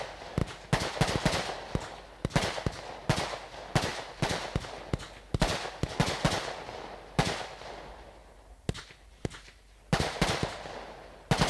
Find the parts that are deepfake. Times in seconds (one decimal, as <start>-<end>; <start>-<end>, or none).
3.9-4.6